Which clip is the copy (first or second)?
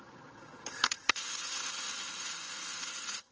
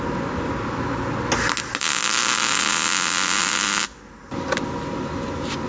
first